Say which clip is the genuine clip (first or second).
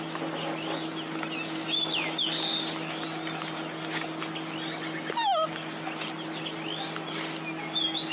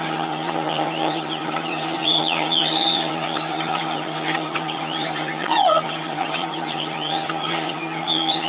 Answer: first